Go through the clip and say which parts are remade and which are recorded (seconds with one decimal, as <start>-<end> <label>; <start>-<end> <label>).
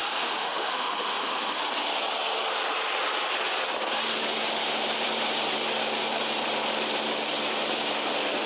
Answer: 0.0-1.6 remade; 1.6-8.5 recorded